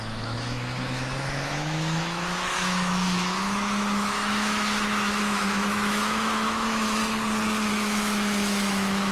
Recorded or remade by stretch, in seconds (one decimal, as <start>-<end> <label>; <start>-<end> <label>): 0.0-7.0 remade; 7.0-7.7 recorded; 7.7-9.1 remade